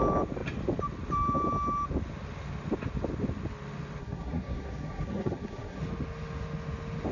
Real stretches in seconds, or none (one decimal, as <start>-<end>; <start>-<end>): 0.0-4.0; 5.8-7.1